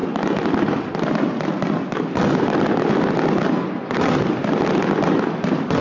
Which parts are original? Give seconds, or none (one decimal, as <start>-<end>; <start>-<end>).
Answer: 0.0-5.8